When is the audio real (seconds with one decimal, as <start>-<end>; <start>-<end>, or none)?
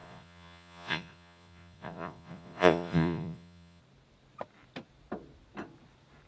3.8-6.3